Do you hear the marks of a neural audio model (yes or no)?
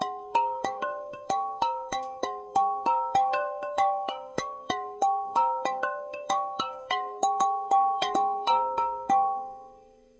yes